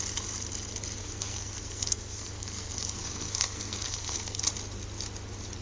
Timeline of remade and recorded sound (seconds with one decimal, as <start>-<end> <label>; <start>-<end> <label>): 0.0-1.0 recorded; 1.0-4.4 remade; 4.4-5.6 recorded